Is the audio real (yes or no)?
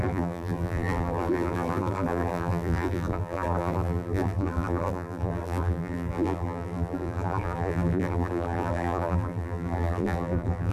no